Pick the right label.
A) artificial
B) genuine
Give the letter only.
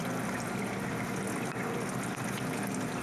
B